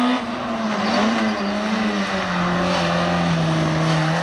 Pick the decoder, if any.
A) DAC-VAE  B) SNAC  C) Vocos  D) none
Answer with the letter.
D